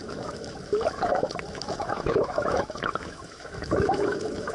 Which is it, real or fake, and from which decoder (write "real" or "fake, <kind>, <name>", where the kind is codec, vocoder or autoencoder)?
fake, autoencoder, DAC-VAE